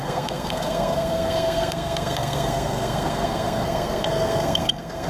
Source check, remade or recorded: remade